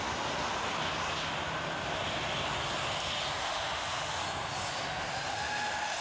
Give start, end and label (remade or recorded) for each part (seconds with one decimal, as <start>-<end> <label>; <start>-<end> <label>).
0.0-3.4 recorded; 3.4-4.2 remade; 4.2-5.3 recorded; 5.3-6.0 remade